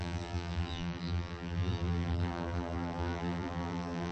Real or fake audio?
fake